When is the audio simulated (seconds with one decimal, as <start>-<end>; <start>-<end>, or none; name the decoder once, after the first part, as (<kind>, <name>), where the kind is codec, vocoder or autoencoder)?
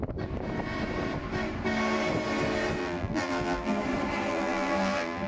2.8-3.8 (vocoder, BigVGAN v2); 4.3-5.3